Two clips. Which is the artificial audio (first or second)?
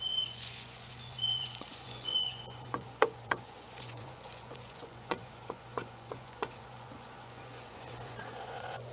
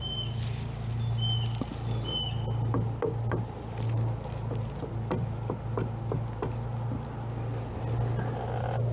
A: first